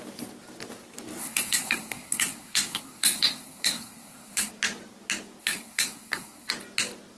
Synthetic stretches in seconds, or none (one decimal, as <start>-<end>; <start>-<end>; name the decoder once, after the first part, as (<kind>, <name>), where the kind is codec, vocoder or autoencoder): 1.2-4.5 (codec, SNAC); 5.4-6.5